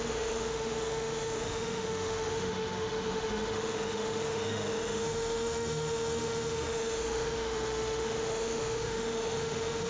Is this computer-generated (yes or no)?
yes